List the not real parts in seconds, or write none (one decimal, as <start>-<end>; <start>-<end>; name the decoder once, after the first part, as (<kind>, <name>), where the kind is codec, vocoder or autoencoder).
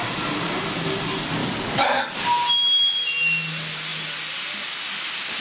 1.4-2.1 (codec, DAC)